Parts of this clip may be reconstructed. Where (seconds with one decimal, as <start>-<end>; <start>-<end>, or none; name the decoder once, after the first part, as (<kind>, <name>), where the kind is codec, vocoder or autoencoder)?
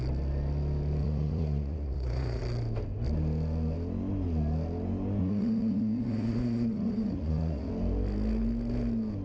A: 1.0-2.4 (vocoder, Vocos); 5.2-7.7